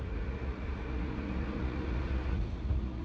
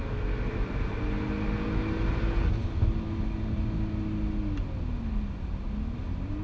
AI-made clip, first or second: first